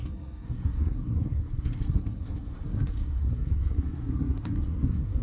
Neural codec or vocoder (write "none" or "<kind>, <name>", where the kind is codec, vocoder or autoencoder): codec, SNAC